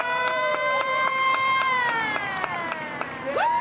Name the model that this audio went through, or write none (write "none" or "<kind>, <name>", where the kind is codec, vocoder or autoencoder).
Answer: vocoder, BigVGAN v2